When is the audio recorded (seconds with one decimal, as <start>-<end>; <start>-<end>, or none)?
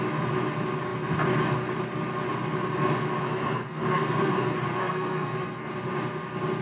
0.0-3.2; 4.3-4.8; 5.7-6.6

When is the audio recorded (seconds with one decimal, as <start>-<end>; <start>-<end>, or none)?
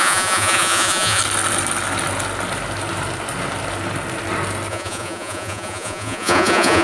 1.2-4.7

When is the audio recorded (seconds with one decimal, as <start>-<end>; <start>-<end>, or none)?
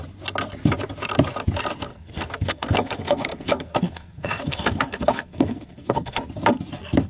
0.0-1.9; 6.2-7.1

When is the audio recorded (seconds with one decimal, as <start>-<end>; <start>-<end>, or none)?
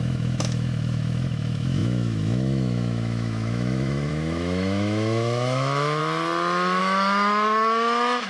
6.0-6.8